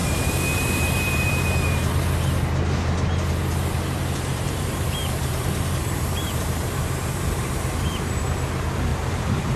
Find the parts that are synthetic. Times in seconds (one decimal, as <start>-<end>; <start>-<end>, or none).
0.0-1.9; 4.3-7.4; 8.9-9.6